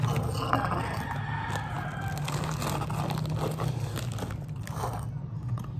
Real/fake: real